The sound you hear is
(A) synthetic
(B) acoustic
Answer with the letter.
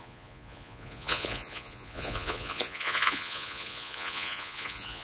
A